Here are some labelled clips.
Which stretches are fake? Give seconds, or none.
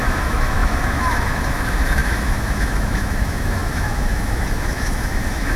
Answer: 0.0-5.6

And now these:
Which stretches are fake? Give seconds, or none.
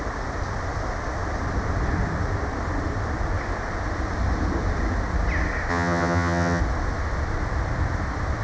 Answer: 5.7-6.6